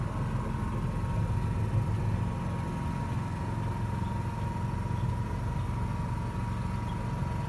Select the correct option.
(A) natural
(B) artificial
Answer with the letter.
A